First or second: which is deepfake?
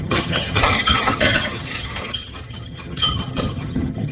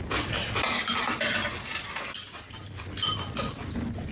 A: first